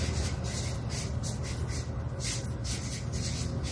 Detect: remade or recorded recorded